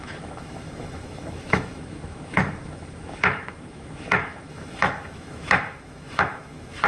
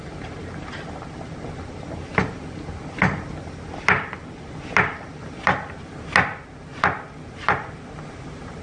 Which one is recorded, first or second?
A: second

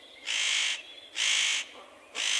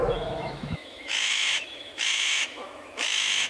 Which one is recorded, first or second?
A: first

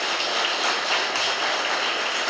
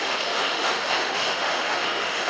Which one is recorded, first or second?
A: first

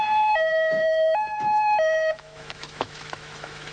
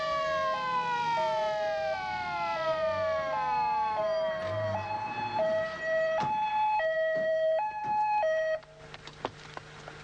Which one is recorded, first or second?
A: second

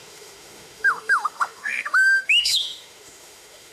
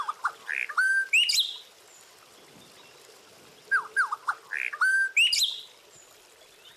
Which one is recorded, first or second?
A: second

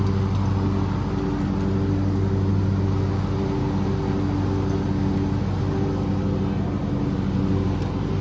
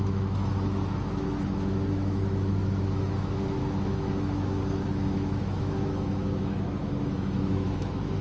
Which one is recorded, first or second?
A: first